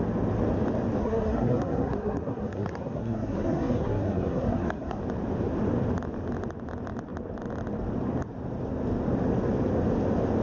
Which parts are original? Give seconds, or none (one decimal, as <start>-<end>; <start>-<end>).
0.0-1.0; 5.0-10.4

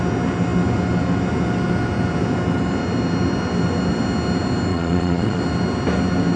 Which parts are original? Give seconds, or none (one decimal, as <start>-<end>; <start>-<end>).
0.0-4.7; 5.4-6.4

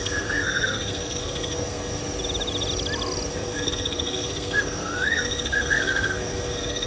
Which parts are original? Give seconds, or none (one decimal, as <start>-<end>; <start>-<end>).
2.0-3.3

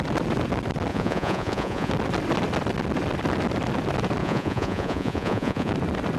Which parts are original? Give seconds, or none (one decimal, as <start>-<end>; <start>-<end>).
0.0-0.9; 1.9-4.2; 5.7-6.2

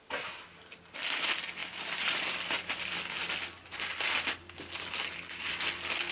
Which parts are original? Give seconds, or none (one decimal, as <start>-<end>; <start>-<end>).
0.0-6.1

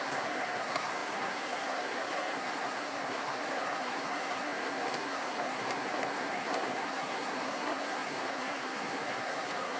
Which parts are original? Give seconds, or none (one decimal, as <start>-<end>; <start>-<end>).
none

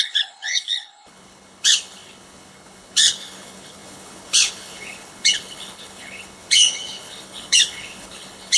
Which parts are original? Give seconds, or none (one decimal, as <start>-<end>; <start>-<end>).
none

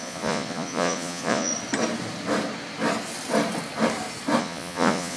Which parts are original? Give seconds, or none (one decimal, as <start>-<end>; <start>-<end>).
1.5-4.4